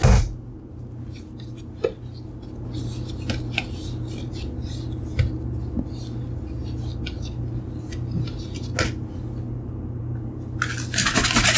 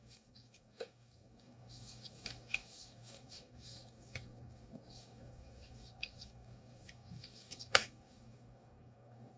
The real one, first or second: first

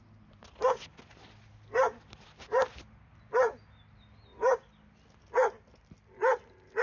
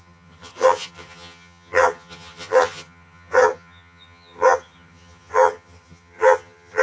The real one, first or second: first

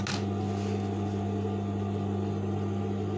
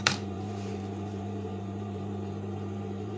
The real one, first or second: first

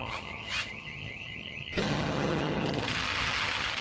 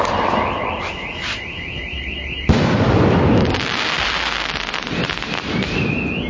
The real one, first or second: second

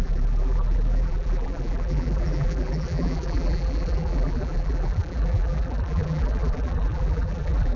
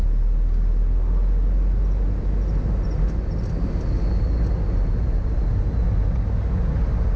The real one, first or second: second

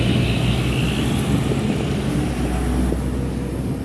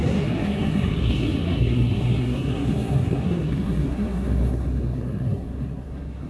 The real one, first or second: first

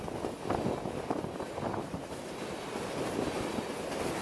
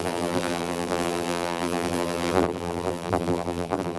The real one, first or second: first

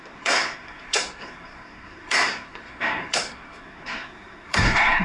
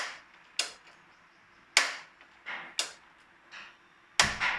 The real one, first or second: second